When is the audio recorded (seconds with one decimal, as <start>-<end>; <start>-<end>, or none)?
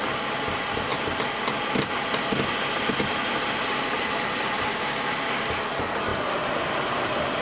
0.0-7.4